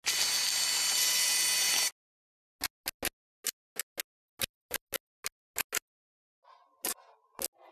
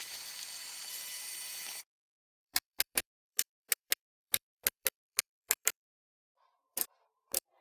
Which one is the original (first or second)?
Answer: first